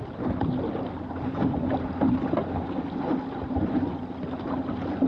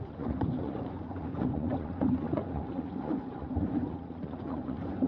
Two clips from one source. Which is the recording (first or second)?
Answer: first